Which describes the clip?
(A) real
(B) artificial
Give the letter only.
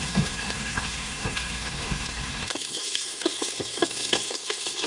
B